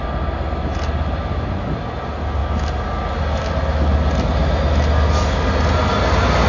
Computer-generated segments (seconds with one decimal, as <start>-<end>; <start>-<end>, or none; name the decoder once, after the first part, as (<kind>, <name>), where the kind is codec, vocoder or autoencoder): none